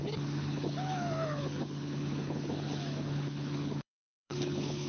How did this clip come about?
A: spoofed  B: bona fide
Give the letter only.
A